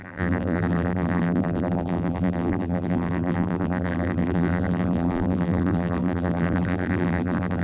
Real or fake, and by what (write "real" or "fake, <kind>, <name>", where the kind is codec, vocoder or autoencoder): fake, vocoder, BigVGAN v2